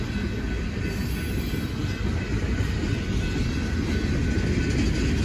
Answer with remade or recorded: recorded